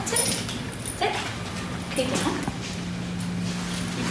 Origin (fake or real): real